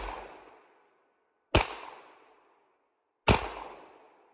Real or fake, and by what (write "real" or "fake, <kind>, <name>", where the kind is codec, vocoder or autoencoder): real